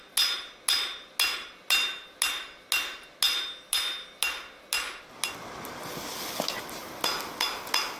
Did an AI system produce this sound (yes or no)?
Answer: no